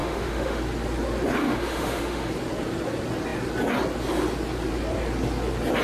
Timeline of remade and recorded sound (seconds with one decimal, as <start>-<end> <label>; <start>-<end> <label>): 0.0-0.6 remade; 0.6-1.4 recorded; 1.4-2.3 remade; 2.3-5.8 recorded